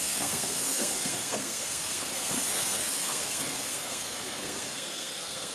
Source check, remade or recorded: remade